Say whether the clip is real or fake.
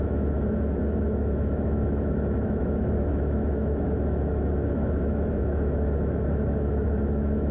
fake